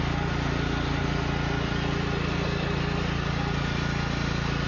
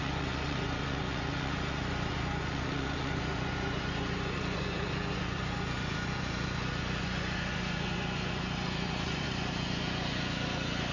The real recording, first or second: first